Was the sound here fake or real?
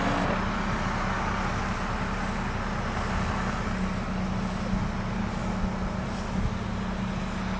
real